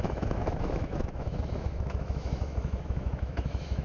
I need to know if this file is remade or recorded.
remade